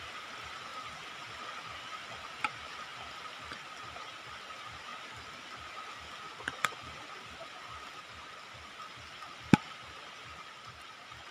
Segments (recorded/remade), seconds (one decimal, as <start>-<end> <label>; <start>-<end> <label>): 0.0-11.3 recorded